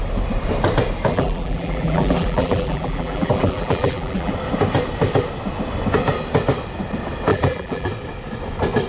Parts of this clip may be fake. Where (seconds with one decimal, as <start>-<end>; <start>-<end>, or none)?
1.1-4.3; 7.3-7.9